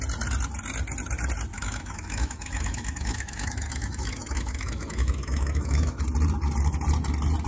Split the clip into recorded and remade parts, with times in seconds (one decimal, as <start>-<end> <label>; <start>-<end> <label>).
0.0-1.5 recorded; 1.5-6.0 remade; 6.0-7.5 recorded

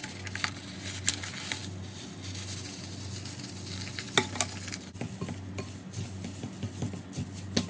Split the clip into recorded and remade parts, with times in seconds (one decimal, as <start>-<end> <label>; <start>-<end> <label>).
0.0-7.7 recorded

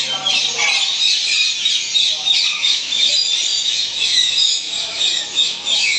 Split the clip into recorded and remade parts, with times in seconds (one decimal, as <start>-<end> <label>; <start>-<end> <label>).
0.0-2.5 recorded; 2.5-3.1 remade; 3.1-3.5 recorded; 3.5-6.0 remade

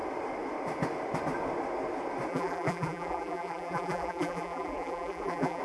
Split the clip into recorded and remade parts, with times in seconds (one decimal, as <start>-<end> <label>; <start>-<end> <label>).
0.0-2.3 recorded; 2.3-5.6 remade

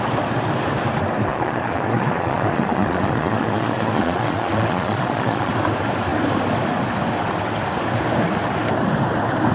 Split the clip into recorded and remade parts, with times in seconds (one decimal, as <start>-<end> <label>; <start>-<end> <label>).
0.0-1.3 recorded; 1.3-5.5 remade; 5.5-9.5 recorded